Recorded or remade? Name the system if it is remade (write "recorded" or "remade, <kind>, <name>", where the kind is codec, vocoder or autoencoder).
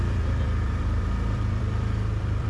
remade, vocoder, BigVGAN v2